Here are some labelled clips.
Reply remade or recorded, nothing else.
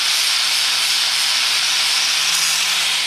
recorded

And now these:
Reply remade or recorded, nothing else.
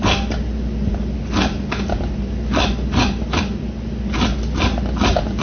recorded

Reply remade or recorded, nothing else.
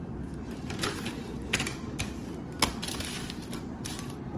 remade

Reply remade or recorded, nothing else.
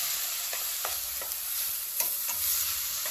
recorded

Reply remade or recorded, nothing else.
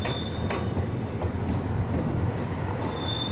remade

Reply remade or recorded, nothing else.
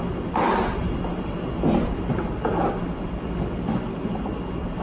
recorded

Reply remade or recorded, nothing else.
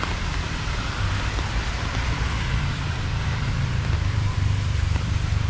remade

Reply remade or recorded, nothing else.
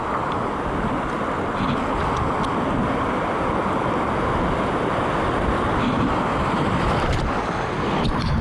recorded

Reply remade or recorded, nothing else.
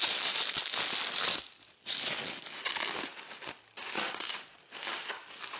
recorded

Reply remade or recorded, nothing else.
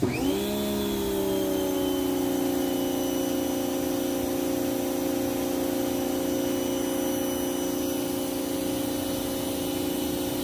recorded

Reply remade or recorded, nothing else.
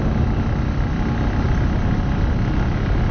recorded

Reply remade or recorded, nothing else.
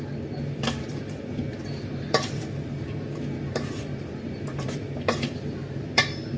remade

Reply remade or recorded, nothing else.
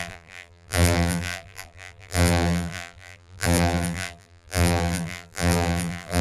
remade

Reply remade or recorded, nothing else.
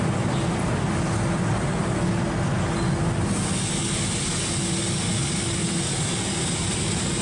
recorded